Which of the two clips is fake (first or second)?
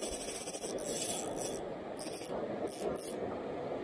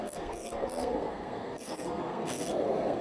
second